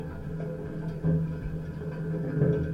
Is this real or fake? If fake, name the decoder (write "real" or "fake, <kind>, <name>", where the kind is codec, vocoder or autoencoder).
real